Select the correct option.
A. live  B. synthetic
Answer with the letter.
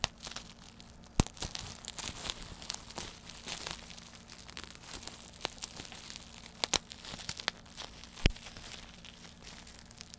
A